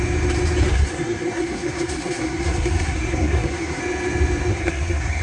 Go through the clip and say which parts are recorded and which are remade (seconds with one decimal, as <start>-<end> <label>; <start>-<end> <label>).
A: 0.0-0.7 recorded; 0.7-3.8 remade; 3.8-4.5 recorded; 4.5-5.2 remade

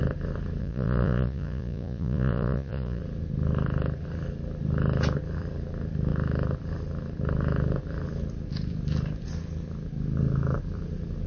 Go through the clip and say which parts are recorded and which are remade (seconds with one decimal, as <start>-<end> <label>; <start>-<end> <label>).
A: 0.0-0.6 recorded; 0.6-3.0 remade; 3.0-11.3 recorded

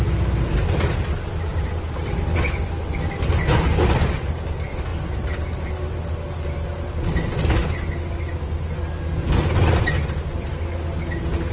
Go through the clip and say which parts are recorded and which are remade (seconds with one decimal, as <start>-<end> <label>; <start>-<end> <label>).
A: 0.0-11.5 recorded

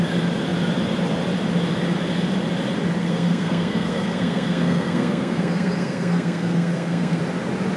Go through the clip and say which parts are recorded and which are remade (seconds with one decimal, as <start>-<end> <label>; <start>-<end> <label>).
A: 0.0-3.0 recorded; 3.0-7.2 remade; 7.2-7.8 recorded

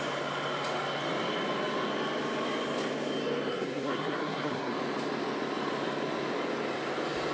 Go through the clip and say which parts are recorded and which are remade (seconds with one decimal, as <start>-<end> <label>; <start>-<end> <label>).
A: 0.0-3.5 recorded; 3.5-4.7 remade; 4.7-7.3 recorded

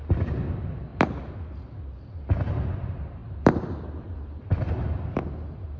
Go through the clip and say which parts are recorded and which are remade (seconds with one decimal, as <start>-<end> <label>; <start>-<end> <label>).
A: 0.0-0.9 recorded; 0.9-1.8 remade; 1.8-3.2 recorded; 3.2-4.5 remade; 4.5-5.8 recorded

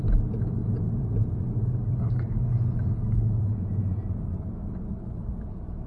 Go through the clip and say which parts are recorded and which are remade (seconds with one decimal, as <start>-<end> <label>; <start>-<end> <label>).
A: 0.0-0.6 recorded; 0.6-1.4 remade; 1.4-3.5 recorded; 3.5-4.2 remade; 4.2-5.9 recorded